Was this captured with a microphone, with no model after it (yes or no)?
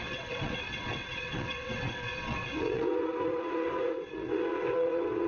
no